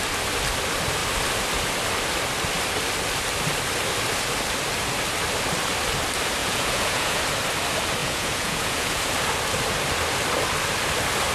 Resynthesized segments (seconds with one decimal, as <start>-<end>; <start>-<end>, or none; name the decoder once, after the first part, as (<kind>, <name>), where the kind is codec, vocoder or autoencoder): 6.4-7.2 (vocoder, Vocos); 8.0-9.0